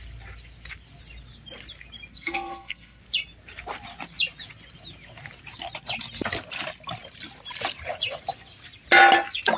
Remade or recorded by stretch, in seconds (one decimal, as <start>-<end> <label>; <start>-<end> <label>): 0.0-2.1 recorded; 2.1-3.0 remade; 3.0-9.6 recorded